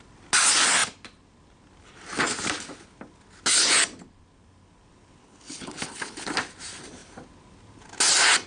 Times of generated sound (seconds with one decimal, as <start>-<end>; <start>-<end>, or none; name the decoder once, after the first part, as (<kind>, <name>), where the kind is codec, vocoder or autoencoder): 5.2-6.3 (codec, HILCodec)

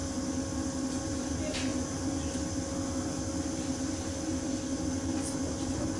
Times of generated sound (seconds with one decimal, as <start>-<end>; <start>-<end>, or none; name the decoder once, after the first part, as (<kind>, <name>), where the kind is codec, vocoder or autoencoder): none

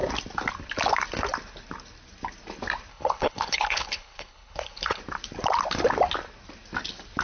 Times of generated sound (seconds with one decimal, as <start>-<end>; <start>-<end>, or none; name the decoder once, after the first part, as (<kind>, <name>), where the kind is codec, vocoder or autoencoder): 2.9-5.0 (codec, HILCodec)

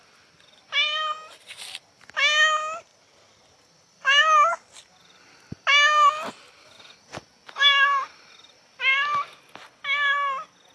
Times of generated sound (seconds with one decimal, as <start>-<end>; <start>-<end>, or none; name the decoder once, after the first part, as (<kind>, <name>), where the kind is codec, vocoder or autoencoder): none

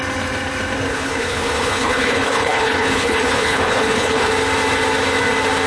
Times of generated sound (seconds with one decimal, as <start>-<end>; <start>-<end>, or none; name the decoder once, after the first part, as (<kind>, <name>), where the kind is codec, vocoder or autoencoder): 0.9-4.3 (codec, HILCodec)